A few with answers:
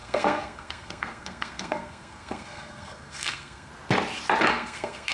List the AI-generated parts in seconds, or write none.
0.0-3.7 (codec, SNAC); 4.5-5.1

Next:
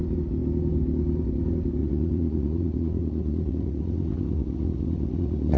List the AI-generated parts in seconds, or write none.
1.8-5.6 (vocoder, Vocos)

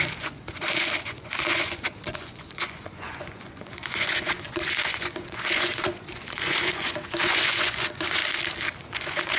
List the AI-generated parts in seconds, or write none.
0.0-8.2 (vocoder, Vocos); 8.8-9.4

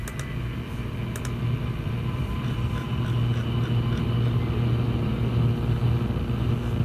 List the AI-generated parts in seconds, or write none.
1.6-2.8 (vocoder, BigVGAN v2)